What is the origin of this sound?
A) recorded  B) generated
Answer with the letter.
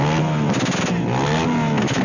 A